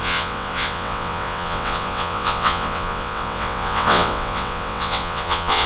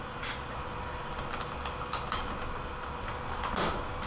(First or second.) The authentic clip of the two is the second